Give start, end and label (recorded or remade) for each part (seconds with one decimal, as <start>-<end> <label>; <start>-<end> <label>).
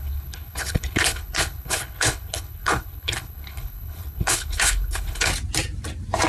0.0-5.3 remade; 5.3-6.3 recorded